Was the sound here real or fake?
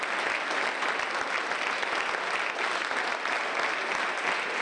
real